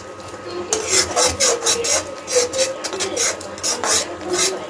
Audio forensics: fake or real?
real